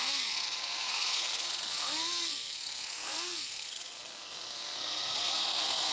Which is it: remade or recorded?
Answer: remade